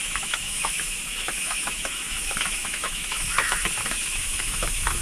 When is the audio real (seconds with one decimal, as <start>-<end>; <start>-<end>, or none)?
none